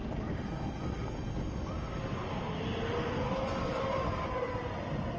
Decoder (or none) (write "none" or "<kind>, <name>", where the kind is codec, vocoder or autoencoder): none